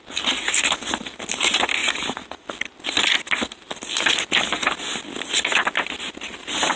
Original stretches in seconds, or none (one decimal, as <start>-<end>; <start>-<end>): 0.0-6.8